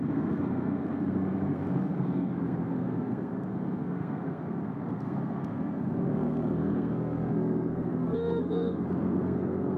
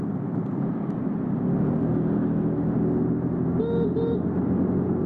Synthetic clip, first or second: first